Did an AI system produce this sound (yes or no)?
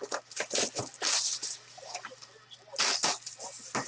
no